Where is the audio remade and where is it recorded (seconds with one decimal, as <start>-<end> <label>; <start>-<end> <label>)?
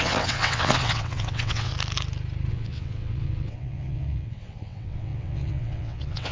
0.0-1.7 remade; 1.7-2.5 recorded; 2.5-6.3 remade